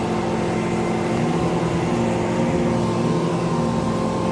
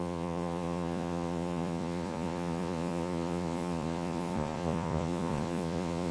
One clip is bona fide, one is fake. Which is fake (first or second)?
second